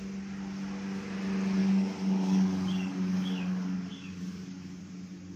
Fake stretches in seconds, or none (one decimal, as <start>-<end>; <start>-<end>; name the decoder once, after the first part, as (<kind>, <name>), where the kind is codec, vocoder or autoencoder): 1.6-4.8 (codec, DAC)